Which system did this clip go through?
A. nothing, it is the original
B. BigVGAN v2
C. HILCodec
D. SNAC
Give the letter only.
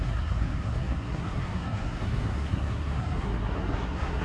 D